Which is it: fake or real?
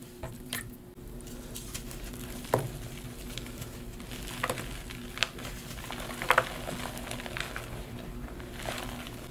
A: real